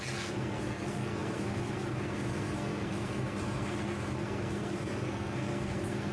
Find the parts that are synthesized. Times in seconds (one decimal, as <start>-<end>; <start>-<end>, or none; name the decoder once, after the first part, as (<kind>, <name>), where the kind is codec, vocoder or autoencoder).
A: 0.0-6.1 (codec, SNAC)